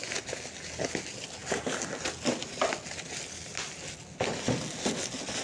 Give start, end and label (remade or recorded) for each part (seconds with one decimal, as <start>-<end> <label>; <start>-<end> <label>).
0.0-5.4 recorded